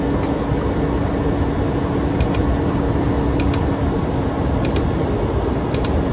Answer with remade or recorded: recorded